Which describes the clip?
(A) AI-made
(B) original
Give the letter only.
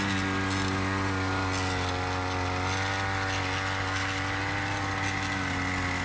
B